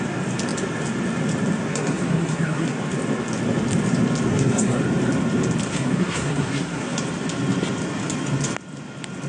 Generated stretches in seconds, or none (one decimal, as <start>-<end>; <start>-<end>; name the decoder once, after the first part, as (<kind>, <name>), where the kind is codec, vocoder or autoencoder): 1.7-2.8 (codec, SNAC); 4.3-4.8; 5.7-7.0